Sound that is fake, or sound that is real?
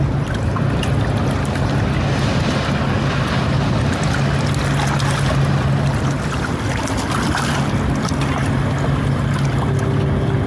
real